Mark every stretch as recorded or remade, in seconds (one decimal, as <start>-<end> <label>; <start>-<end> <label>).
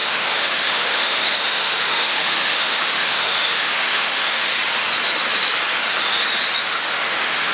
0.0-4.5 remade; 4.5-6.6 recorded; 6.6-7.5 remade